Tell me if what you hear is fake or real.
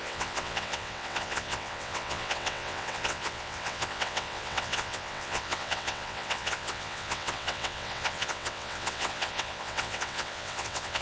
fake